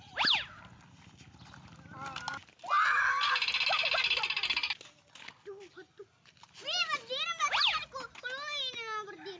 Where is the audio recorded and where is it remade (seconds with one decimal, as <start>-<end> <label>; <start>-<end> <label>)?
0.0-9.4 recorded